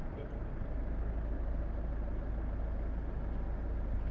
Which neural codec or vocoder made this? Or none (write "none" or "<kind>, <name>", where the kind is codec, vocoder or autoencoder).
none